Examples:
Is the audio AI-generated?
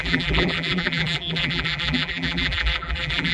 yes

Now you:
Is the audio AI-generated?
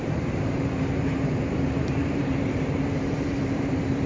yes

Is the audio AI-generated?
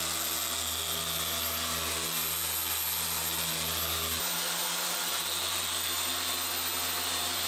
no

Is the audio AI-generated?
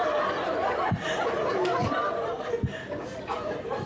no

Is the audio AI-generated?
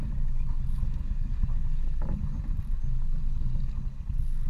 no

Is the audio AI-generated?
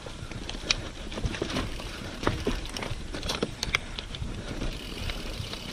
yes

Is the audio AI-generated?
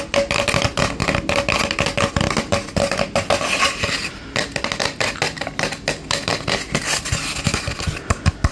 no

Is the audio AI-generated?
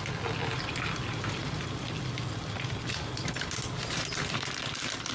no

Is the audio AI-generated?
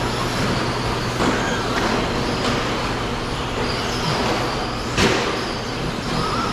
no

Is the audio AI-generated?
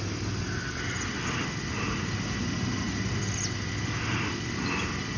no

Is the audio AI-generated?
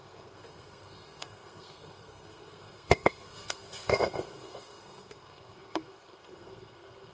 yes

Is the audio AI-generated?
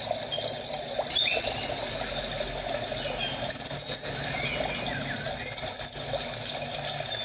no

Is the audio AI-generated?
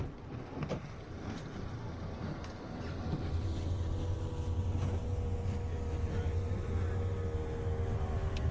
no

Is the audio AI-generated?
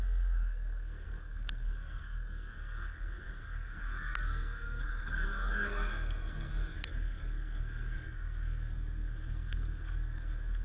yes